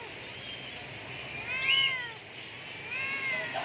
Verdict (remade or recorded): recorded